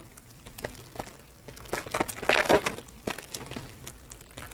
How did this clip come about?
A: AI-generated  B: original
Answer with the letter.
B